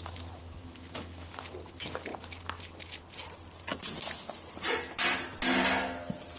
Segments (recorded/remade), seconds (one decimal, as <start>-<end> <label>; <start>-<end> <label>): 0.0-0.4 recorded; 0.4-1.4 remade; 1.4-6.4 recorded